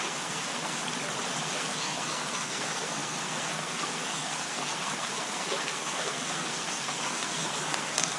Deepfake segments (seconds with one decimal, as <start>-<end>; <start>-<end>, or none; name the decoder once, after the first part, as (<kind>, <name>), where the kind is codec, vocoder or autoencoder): 0.0-0.8 (codec, SNAC); 1.4-8.2